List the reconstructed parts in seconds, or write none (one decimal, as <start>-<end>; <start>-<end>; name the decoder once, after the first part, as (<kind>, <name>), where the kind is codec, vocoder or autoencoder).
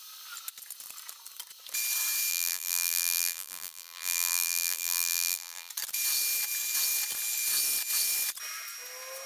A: 2.3-5.7 (vocoder, BigVGAN v2)